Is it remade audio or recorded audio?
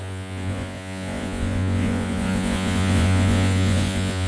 remade